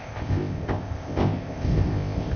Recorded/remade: remade